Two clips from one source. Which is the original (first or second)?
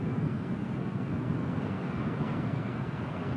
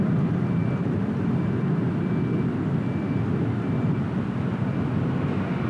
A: second